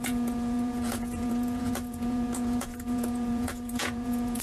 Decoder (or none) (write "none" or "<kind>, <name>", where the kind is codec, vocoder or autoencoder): vocoder, Vocos